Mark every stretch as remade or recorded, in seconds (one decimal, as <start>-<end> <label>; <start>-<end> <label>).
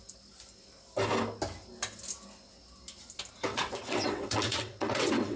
0.0-3.5 recorded; 3.5-5.4 remade